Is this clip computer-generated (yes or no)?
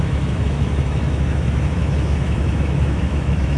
yes